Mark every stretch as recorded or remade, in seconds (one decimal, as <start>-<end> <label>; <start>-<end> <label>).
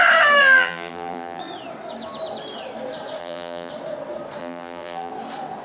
0.0-0.4 recorded; 0.4-1.4 remade; 1.4-3.2 recorded; 3.2-3.7 remade; 3.7-4.4 recorded; 4.4-5.1 remade; 5.1-5.6 recorded